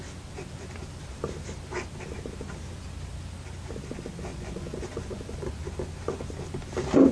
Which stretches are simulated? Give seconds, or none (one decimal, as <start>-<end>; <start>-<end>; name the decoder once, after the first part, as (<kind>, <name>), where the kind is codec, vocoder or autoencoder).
4.3-5.6 (vocoder, Vocos)